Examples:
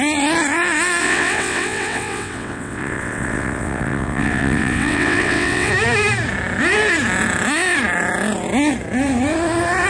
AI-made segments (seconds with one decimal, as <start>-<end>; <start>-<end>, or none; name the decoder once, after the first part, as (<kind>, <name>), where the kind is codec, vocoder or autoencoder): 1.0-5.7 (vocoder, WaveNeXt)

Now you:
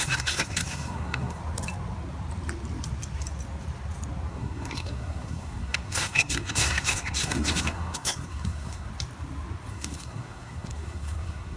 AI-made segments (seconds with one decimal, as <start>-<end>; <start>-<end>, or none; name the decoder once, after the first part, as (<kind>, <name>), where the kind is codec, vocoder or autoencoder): 0.0-1.4 (codec, SNAC); 4.3-8.9; 9.7-11.6

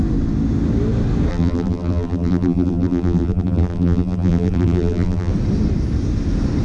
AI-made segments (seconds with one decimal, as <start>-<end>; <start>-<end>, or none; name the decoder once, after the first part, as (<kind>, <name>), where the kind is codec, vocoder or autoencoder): 1.3-5.3 (vocoder, BigVGAN v2)